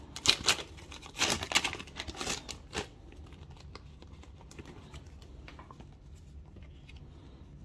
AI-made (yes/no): no